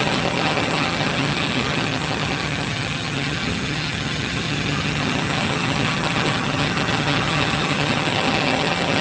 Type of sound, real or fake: fake